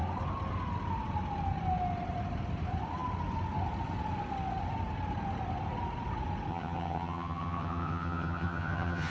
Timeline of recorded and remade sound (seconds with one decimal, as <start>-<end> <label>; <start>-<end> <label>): 0.0-6.5 recorded; 6.5-9.1 remade